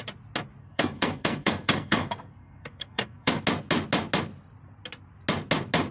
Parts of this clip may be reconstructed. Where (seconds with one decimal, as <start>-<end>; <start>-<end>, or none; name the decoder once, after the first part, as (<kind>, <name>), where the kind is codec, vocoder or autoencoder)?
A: 0.6-3.4 (codec, SNAC)